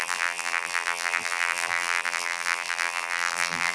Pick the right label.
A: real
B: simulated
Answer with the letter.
B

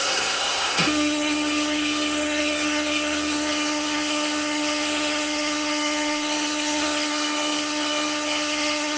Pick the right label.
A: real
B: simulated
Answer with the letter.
B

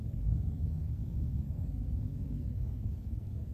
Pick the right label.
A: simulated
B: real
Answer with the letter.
A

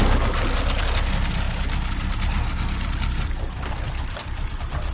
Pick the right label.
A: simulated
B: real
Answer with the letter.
B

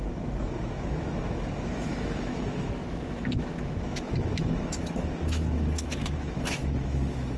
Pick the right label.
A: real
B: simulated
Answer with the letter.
B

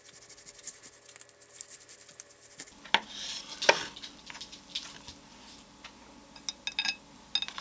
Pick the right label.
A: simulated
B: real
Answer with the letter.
B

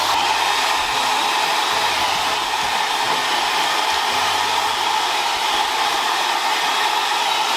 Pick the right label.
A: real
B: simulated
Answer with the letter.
A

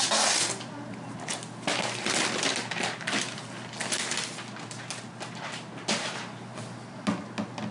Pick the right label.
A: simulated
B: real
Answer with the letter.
B